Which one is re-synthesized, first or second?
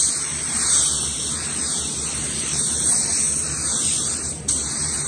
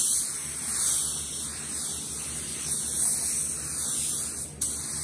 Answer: first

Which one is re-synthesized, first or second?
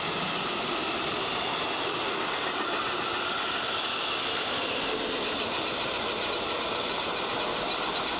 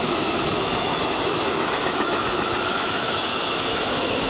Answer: second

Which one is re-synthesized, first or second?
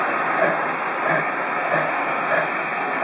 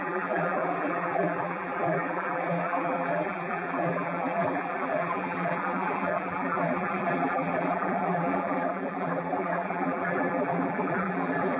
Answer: second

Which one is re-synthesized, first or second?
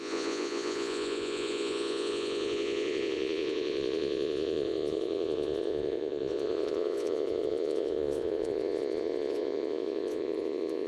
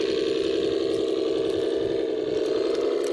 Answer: first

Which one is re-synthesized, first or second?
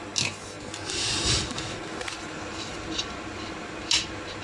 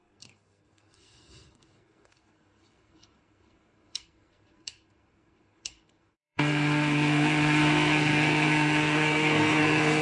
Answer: second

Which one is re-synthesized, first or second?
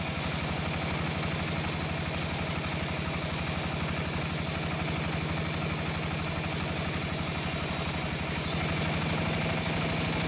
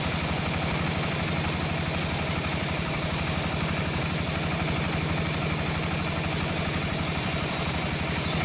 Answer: second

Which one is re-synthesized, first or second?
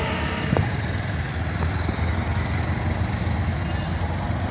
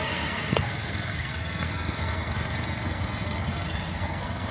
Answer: second